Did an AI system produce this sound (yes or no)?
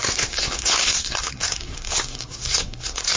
yes